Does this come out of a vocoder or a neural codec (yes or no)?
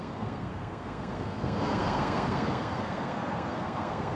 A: yes